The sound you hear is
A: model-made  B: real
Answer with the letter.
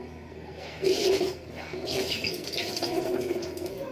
A